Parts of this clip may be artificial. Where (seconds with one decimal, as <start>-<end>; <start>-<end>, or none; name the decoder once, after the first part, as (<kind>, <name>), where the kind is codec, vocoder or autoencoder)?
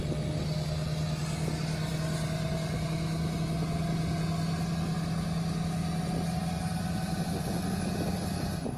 none